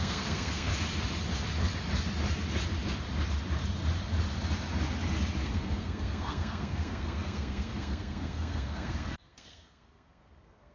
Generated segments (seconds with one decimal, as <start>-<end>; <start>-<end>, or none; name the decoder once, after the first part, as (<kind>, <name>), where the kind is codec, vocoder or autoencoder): 0.0-0.7 (codec, SNAC); 5.4-10.7

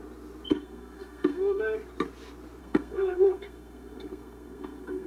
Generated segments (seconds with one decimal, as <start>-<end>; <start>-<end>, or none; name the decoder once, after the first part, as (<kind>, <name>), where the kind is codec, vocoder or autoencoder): 0.5-1.6 (codec, SNAC); 2.6-5.1

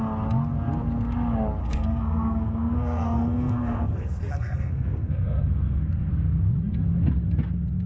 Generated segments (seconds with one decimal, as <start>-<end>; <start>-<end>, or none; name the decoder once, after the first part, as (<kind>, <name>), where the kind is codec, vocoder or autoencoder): 1.6-6.1 (codec, SNAC)